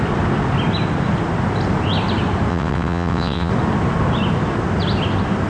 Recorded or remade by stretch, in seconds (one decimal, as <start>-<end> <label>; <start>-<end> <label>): 0.0-2.5 recorded; 2.5-3.5 remade; 3.5-5.5 recorded